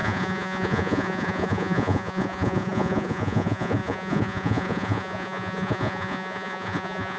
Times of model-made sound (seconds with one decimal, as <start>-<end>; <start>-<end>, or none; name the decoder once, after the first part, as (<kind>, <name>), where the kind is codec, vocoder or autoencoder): 0.0-7.2 (vocoder, Vocos)